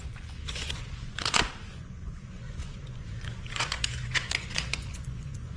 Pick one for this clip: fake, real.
fake